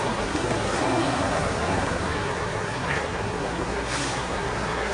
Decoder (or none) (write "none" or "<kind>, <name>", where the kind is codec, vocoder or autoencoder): codec, SNAC